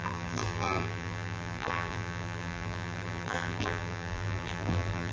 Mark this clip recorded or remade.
remade